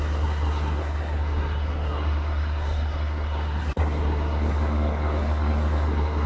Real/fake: fake